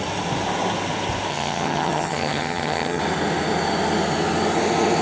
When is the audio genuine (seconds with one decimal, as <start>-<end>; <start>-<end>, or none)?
0.0-1.3; 3.0-5.0